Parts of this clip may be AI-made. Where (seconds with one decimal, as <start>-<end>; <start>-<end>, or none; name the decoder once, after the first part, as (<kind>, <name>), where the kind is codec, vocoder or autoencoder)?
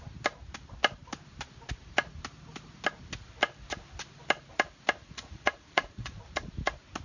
5.0-6.2 (vocoder, Vocos)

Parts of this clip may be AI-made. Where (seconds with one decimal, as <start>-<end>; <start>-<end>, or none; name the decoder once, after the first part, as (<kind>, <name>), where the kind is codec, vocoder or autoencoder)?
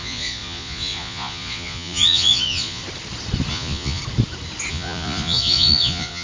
0.0-2.8 (vocoder, Vocos); 3.5-4.0; 4.7-6.2